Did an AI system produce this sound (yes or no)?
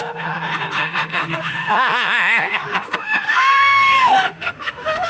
yes